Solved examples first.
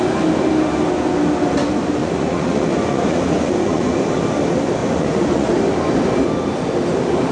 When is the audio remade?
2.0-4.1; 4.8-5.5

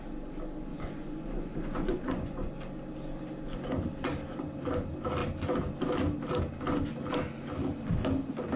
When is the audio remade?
0.7-2.5